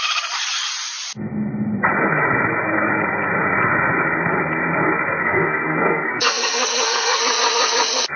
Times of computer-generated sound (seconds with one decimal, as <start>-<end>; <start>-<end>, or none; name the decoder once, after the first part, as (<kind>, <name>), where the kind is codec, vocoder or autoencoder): 5.2-7.2 (codec, SNAC)